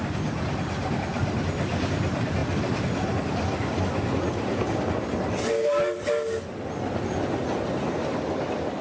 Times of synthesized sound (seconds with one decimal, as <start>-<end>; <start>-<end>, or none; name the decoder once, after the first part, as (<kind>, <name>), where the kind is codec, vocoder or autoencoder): none